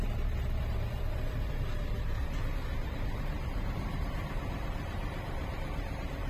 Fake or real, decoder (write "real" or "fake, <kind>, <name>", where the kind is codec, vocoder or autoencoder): fake, vocoder, BigVGAN v2